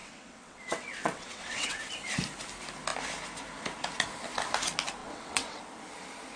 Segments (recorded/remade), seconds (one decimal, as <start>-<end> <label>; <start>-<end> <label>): 0.0-1.8 remade; 1.8-5.0 recorded; 5.0-5.6 remade; 5.6-6.4 recorded